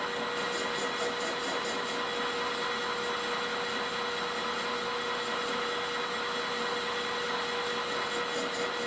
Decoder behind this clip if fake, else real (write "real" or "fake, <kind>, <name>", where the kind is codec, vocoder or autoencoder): real